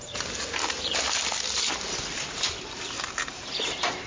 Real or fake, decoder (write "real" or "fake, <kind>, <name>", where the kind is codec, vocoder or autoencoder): fake, vocoder, BigVGAN v2